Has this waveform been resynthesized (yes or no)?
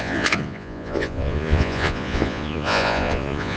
yes